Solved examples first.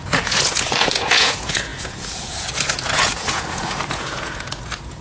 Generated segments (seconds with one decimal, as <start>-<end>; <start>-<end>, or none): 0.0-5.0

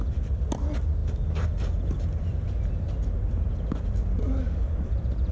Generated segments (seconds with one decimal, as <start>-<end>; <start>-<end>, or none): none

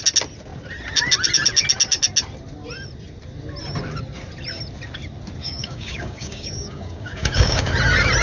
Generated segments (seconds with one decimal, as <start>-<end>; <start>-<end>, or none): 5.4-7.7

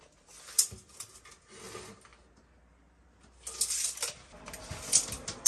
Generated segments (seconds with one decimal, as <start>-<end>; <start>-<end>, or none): none

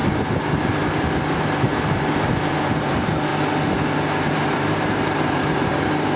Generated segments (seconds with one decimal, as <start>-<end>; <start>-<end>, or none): 1.3-3.3; 4.3-6.2

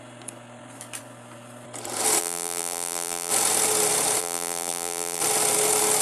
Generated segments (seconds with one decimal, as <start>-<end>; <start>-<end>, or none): 2.2-3.3; 4.2-5.2